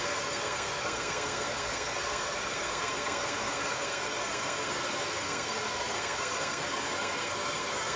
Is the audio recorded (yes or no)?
no